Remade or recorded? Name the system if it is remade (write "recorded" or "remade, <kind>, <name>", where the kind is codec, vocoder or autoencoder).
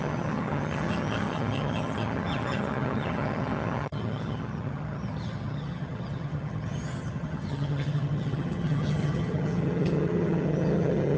remade, vocoder, HiFi-GAN